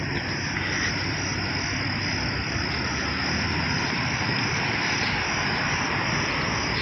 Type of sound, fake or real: real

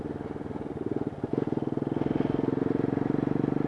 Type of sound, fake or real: real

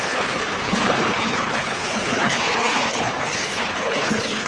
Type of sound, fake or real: fake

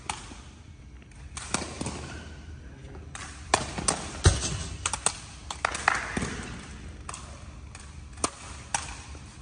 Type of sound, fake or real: real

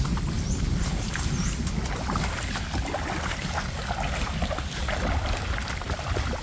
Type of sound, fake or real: real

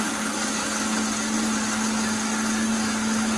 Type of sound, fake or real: real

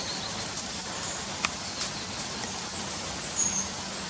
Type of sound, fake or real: real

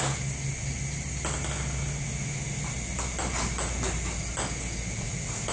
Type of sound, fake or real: real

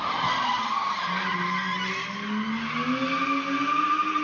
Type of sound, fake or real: real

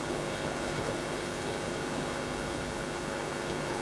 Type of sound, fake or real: fake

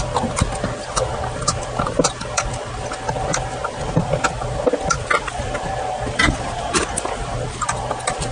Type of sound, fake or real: real